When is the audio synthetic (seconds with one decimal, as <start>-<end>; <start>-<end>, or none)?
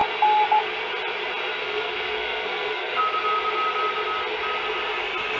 1.6-3.0